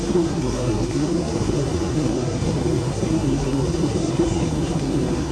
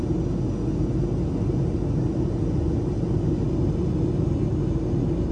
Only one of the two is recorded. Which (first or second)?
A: second